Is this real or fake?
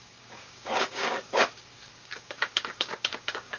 fake